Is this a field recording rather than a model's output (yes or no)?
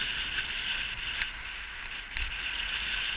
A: yes